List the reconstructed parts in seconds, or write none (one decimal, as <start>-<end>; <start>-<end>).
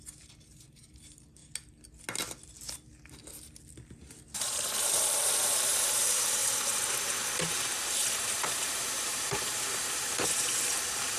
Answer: 0.0-1.4; 5.1-6.4; 8.2-11.2